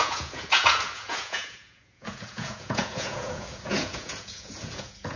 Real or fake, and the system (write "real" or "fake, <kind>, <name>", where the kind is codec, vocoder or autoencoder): fake, vocoder, Vocos